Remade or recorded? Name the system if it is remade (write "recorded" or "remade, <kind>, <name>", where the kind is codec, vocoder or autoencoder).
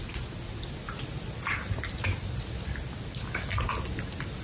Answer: recorded